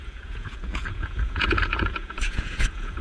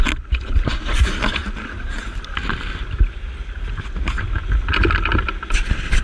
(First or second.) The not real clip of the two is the first